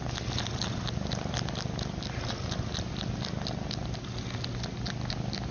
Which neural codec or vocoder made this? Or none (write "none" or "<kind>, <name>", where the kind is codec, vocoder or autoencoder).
none